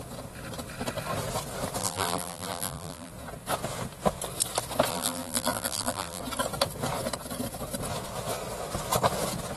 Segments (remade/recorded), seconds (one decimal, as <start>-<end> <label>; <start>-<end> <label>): 0.0-1.8 recorded; 1.8-3.1 remade; 3.1-4.9 recorded; 4.9-6.2 remade; 6.2-9.6 recorded